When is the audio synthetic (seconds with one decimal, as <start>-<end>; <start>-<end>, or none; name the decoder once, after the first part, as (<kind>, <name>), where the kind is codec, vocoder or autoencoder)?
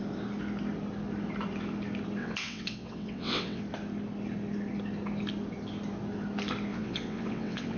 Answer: 2.2-3.6 (vocoder, WaveNeXt); 6.7-7.8